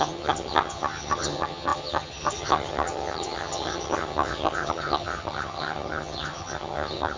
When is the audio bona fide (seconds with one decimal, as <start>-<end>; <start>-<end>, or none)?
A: none